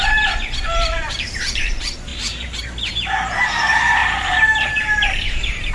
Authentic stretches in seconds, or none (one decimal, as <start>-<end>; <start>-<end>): none